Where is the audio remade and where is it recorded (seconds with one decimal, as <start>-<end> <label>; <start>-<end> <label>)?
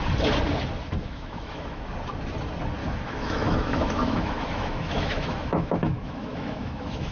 0.0-1.0 recorded; 1.0-1.9 remade; 1.9-2.8 recorded; 2.8-7.1 remade